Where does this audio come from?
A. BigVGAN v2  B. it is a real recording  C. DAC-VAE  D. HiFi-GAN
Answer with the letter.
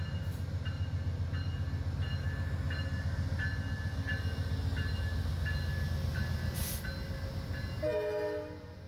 B